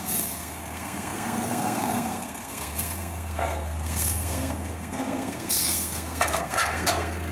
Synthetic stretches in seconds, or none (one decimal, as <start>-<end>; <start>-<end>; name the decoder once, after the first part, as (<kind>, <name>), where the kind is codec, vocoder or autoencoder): 0.0-7.3 (codec, SNAC)

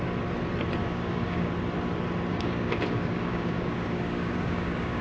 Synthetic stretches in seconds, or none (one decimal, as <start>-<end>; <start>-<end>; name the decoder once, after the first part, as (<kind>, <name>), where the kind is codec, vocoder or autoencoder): 0.8-1.5 (codec, DAC); 2.3-5.0